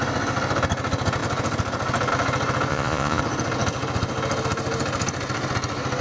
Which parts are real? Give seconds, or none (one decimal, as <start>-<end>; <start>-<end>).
0.0-2.7; 3.2-6.0

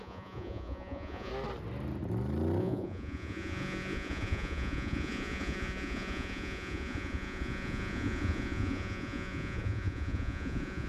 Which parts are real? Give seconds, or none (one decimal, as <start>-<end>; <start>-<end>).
1.3-2.6

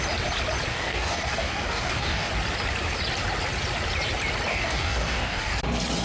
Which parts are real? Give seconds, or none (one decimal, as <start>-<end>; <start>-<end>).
0.0-0.7; 2.3-4.5; 5.6-6.0

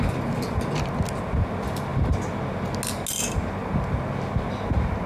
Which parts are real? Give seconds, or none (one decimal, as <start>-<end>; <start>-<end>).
0.0-5.1

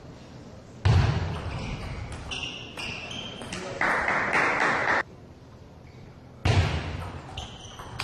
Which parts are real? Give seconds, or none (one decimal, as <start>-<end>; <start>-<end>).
0.0-2.4; 4.1-4.8; 5.5-8.0